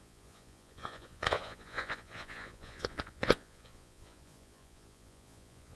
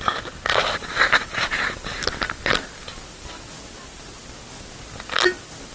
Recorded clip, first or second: second